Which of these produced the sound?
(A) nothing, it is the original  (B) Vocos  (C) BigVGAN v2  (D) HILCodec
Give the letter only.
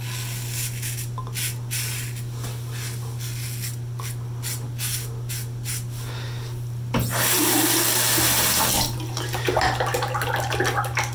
A